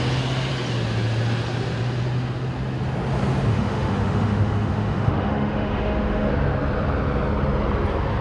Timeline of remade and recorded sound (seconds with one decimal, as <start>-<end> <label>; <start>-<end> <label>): 0.0-3.5 recorded; 3.5-6.3 remade; 6.3-8.2 recorded